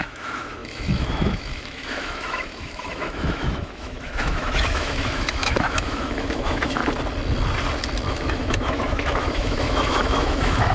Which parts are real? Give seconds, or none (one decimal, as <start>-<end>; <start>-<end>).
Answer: 6.8-8.1